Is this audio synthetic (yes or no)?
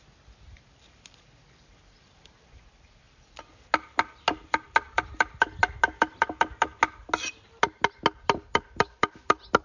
no